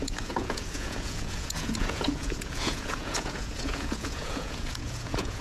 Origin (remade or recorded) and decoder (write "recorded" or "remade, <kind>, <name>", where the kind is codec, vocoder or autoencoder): remade, vocoder, Vocos